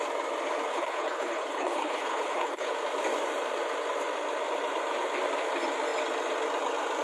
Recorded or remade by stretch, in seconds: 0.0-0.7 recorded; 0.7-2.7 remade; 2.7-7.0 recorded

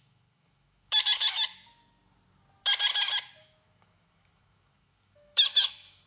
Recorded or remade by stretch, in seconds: 0.0-1.8 remade; 1.8-3.4 recorded; 3.4-6.1 remade

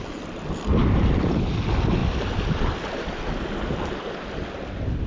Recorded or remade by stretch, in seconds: 0.0-5.1 recorded

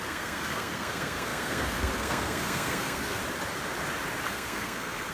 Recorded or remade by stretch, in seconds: 0.0-3.2 remade; 3.2-4.3 recorded; 4.3-5.1 remade

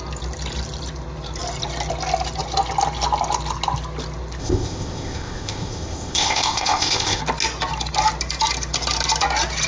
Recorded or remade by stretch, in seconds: 0.0-4.4 recorded; 4.4-7.2 remade; 7.2-9.7 recorded

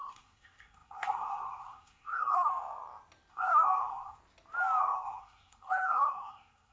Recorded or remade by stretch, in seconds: 0.0-2.5 remade; 2.5-3.3 recorded; 3.3-4.2 remade; 4.2-4.8 recorded; 4.8-6.7 remade

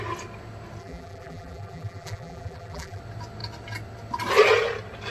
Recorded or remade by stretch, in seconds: 0.0-0.8 recorded; 0.8-3.0 remade; 3.0-5.1 recorded

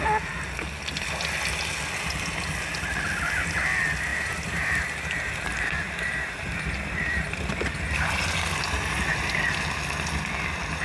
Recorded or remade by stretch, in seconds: 0.0-4.1 recorded; 4.1-7.3 remade; 7.3-10.8 recorded